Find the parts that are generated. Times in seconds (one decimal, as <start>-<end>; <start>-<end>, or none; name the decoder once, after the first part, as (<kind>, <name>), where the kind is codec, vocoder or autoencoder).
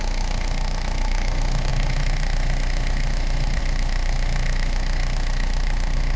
0.0-6.2 (autoencoder, DAC-VAE)